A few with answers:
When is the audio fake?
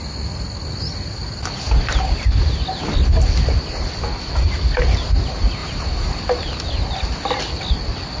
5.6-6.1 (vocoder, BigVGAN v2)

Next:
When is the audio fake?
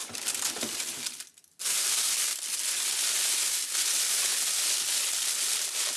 none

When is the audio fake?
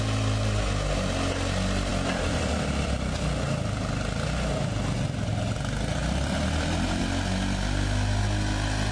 1.9-2.9 (vocoder, BigVGAN v2); 6.0-7.0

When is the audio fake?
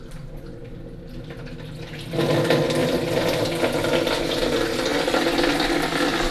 2.8-3.4 (vocoder, BigVGAN v2)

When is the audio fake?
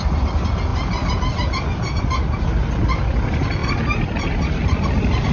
3.6-5.3 (vocoder, BigVGAN v2)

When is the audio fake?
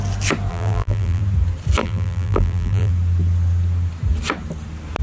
0.5-1.2 (vocoder, BigVGAN v2); 1.8-2.9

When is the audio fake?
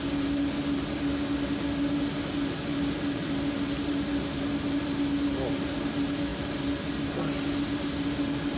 6.3-6.9 (vocoder, BigVGAN v2)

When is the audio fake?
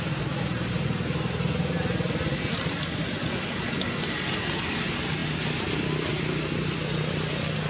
none